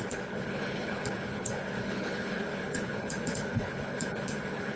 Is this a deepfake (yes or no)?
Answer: yes